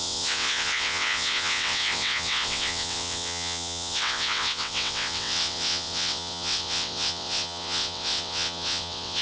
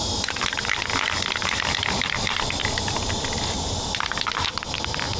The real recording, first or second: second